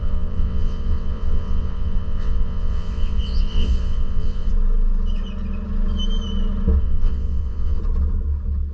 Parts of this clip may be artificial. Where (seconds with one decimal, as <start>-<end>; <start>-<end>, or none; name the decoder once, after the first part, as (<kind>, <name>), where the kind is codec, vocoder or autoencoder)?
0.0-4.5 (vocoder, WaveNeXt); 6.8-7.8